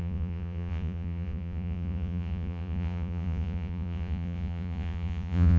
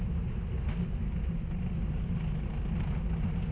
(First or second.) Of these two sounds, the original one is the second